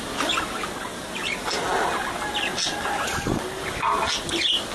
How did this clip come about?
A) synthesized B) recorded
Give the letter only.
B